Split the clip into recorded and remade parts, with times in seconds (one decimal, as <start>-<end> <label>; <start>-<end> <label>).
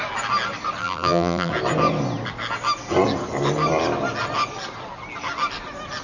0.0-0.8 recorded; 0.8-1.5 remade; 1.5-6.0 recorded